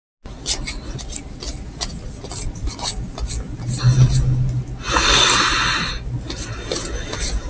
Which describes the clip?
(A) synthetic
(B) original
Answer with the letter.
B